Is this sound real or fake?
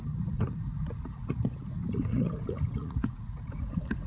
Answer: fake